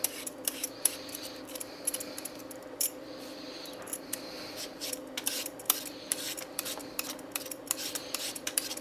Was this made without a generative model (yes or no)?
no